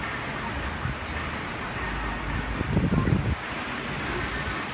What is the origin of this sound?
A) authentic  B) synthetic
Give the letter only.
A